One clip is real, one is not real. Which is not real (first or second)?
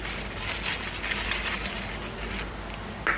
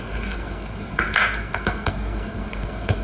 second